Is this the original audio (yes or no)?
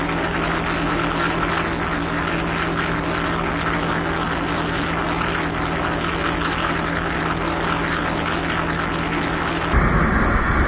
yes